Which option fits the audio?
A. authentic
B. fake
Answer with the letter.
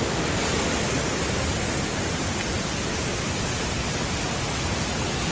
A